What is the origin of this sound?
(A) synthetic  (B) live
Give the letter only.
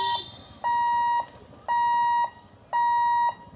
B